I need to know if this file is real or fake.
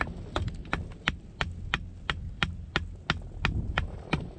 real